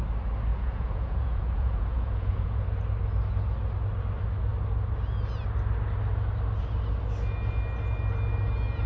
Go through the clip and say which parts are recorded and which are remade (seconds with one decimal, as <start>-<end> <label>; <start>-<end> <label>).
0.0-0.5 recorded; 0.5-2.6 remade; 2.6-8.9 recorded